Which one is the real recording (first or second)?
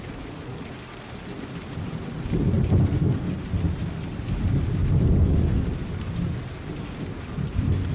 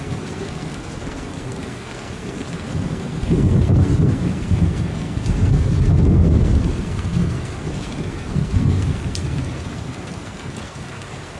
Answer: first